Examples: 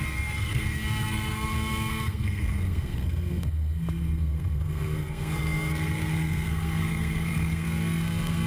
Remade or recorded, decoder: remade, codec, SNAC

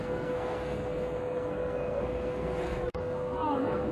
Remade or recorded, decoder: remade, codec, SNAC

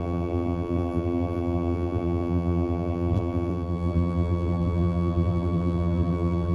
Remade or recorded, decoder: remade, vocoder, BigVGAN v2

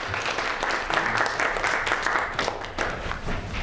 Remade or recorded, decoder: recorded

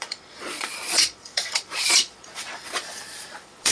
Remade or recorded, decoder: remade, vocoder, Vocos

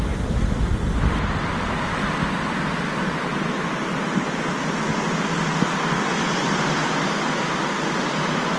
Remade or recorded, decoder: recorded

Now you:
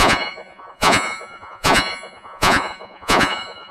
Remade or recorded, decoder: remade, vocoder, Vocos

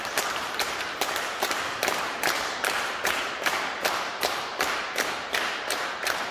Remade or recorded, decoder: remade, vocoder, BigVGAN v2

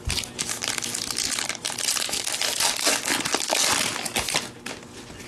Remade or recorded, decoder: recorded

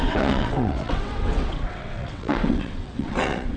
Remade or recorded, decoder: remade, vocoder, WaveNeXt